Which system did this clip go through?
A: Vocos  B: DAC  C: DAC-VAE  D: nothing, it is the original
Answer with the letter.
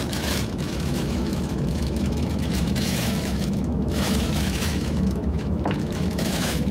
C